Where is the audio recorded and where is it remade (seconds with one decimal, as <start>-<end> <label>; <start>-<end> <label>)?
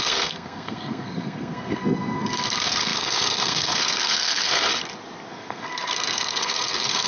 0.0-4.7 remade; 4.7-5.3 recorded; 5.3-7.1 remade